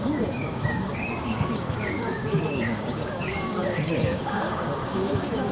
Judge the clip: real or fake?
fake